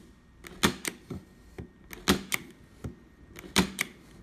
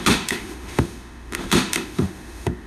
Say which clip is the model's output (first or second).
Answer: second